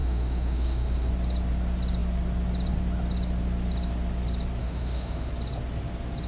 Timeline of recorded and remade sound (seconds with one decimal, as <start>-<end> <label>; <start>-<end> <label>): 0.0-1.1 remade; 1.1-4.6 recorded; 4.6-5.3 remade; 5.3-6.3 recorded